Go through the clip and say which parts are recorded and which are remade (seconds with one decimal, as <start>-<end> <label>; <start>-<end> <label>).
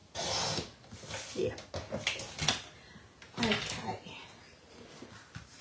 0.0-5.6 recorded